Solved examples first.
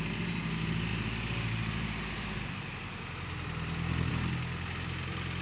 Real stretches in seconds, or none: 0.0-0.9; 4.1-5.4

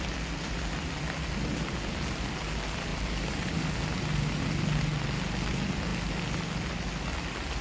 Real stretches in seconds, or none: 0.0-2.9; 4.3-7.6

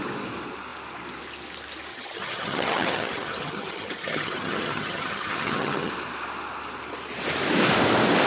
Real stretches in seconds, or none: 0.0-1.9; 5.9-8.3

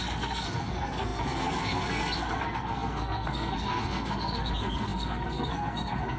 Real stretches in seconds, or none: none

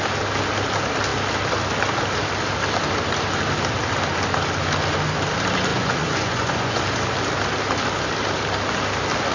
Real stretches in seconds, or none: 0.0-5.7; 6.8-9.3

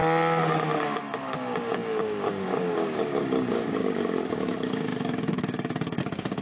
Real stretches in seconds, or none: 0.0-0.8